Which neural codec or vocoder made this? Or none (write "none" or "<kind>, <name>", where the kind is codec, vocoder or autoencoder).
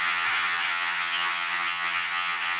vocoder, HiFi-GAN